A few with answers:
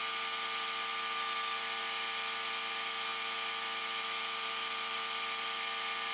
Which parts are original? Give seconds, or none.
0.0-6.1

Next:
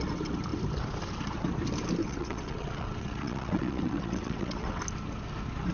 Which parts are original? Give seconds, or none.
0.0-2.0; 4.8-5.7

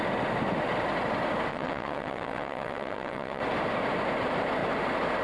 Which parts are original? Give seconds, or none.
0.0-1.5; 3.4-5.2

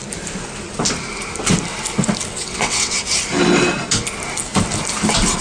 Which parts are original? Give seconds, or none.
0.0-2.3; 3.0-5.4